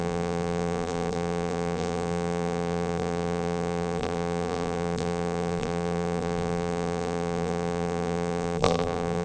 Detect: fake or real fake